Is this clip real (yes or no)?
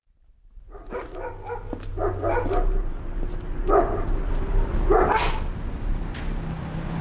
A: yes